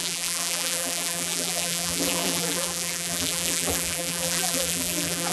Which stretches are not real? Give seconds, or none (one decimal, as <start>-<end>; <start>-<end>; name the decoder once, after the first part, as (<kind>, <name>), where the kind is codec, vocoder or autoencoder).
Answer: 0.0-5.3 (vocoder, BigVGAN v2)